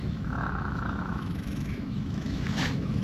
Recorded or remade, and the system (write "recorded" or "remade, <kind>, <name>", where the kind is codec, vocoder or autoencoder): remade, autoencoder, DAC-VAE